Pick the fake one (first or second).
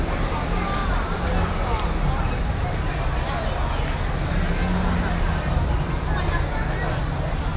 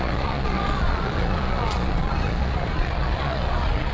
second